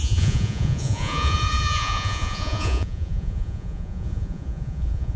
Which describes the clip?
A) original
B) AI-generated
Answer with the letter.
B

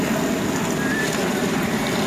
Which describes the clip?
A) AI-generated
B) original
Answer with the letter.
B